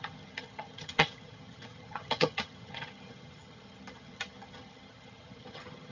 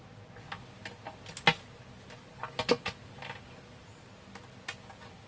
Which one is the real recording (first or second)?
second